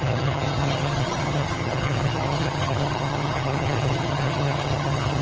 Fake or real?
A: fake